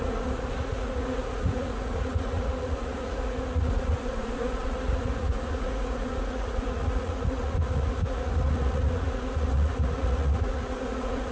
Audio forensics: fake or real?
fake